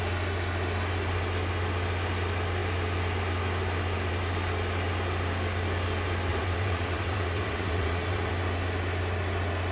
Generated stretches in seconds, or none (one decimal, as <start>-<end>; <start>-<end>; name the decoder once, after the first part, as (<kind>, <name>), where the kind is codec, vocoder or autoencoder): 6.3-8.3 (vocoder, WaveNeXt)